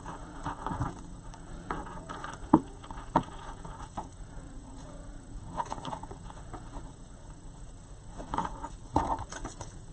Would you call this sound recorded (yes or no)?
no